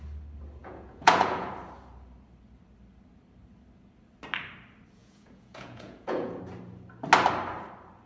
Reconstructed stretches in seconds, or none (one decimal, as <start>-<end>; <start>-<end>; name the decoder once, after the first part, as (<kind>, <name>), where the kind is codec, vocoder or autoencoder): 0.6-1.5 (vocoder, Vocos); 5.0-6.4